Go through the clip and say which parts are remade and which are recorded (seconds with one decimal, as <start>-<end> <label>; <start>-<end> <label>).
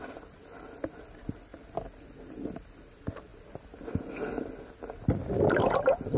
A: 0.0-6.2 recorded